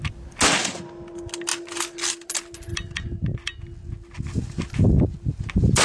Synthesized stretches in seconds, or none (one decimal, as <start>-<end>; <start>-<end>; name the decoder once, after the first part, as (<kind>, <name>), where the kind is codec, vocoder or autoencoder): none